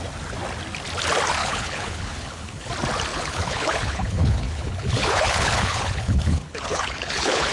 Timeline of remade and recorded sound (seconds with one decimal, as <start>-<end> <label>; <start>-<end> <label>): 0.0-1.4 recorded; 1.4-2.7 remade; 2.7-3.1 recorded; 3.1-7.5 remade